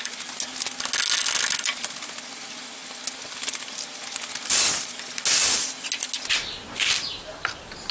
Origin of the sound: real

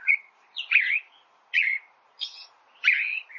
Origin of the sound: fake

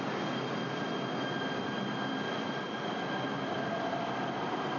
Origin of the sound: real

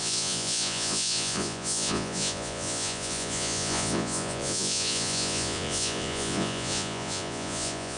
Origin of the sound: fake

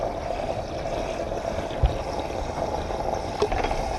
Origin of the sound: real